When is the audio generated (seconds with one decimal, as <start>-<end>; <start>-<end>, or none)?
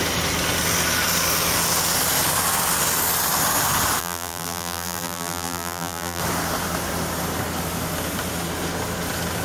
4.0-6.2